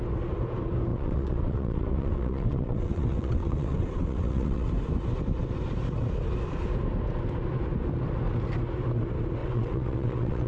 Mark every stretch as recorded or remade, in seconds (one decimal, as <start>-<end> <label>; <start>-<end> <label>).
0.0-0.9 recorded; 0.9-4.7 remade; 4.7-9.4 recorded; 9.4-10.5 remade